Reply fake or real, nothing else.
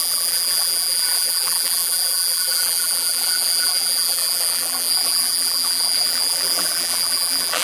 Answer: fake